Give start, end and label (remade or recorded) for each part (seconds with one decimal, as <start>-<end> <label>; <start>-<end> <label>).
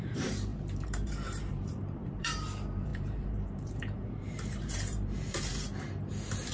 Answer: 0.0-5.5 remade; 5.5-6.1 recorded; 6.1-6.5 remade